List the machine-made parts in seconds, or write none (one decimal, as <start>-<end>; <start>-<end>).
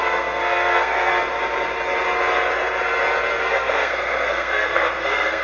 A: 0.0-1.1; 3.4-5.4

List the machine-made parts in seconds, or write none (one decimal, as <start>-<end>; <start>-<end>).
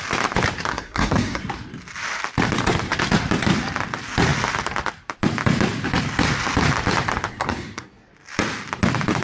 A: 0.7-1.4; 7.3-8.1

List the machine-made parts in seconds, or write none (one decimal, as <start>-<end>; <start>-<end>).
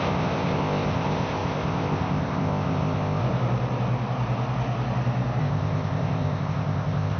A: 0.0-3.2; 5.4-7.2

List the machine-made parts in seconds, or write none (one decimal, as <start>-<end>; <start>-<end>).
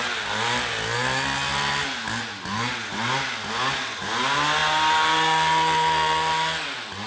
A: none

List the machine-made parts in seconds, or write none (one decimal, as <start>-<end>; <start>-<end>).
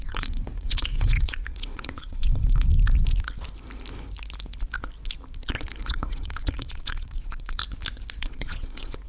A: 0.0-2.7; 5.8-7.6; 8.2-9.1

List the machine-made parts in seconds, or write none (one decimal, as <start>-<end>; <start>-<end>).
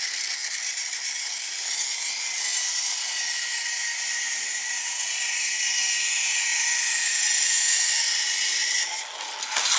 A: 0.4-2.1; 2.5-4.3; 6.5-7.1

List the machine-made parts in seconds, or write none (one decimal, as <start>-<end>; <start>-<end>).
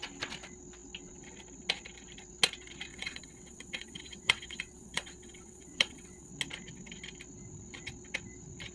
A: 2.9-6.3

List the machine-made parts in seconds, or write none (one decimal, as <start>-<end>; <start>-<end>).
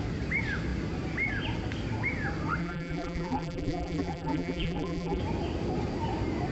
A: 2.6-5.2